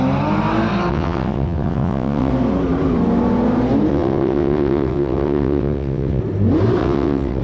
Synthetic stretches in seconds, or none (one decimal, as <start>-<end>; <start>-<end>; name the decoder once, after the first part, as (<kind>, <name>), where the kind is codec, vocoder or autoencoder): 0.9-2.3 (vocoder, WaveNeXt); 3.9-6.2; 6.8-7.4